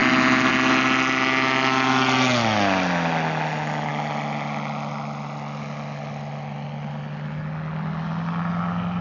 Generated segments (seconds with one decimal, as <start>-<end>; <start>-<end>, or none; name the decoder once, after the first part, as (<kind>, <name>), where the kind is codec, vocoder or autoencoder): none